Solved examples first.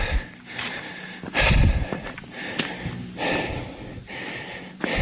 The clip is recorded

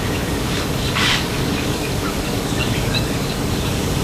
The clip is remade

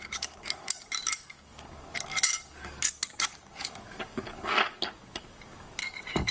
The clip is remade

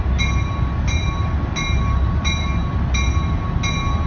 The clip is recorded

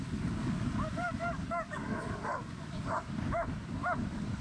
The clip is remade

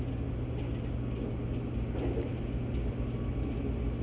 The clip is recorded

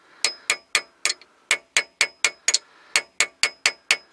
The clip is recorded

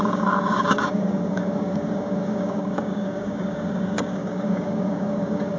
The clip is remade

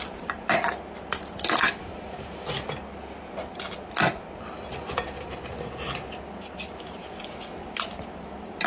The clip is recorded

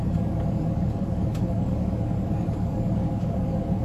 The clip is remade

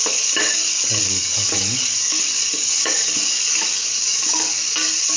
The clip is remade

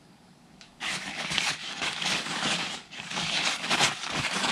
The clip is remade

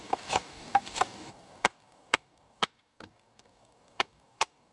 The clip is remade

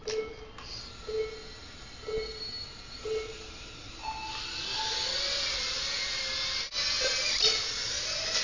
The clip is recorded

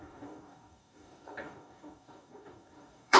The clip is remade